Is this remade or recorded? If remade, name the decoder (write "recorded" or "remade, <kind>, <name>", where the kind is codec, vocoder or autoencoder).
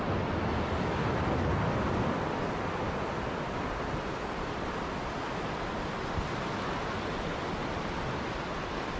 recorded